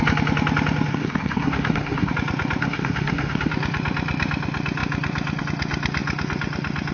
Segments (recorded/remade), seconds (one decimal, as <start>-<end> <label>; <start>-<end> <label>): 0.0-0.9 recorded; 0.9-2.1 remade; 2.1-2.6 recorded; 2.6-3.5 remade; 3.5-6.9 recorded